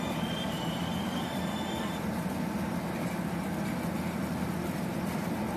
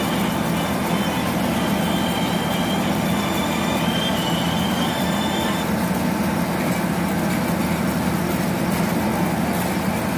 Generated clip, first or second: first